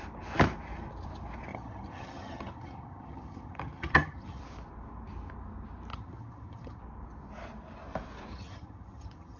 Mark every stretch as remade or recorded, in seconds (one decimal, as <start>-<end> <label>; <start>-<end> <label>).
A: 0.0-1.5 recorded; 1.5-4.4 remade; 4.4-5.9 recorded; 5.9-6.8 remade; 6.8-8.3 recorded; 8.3-9.4 remade